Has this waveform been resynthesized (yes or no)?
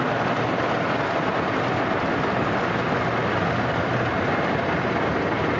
no